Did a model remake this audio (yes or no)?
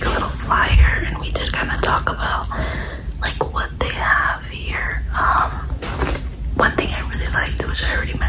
no